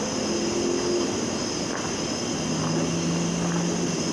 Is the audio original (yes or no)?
yes